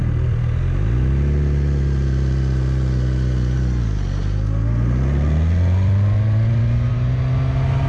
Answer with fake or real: real